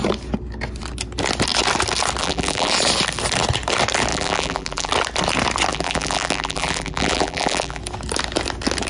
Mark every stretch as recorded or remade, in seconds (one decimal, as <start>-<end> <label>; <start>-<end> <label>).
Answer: 0.0-2.2 recorded; 2.2-2.7 remade; 2.7-4.1 recorded; 4.1-4.9 remade; 4.9-5.7 recorded; 5.7-7.8 remade; 7.8-8.9 recorded